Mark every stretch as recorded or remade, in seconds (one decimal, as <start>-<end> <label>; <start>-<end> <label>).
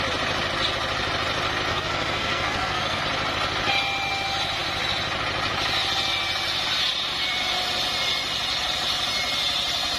0.0-1.7 recorded; 1.7-3.0 remade; 3.0-10.0 recorded